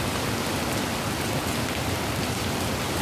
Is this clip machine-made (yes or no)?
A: yes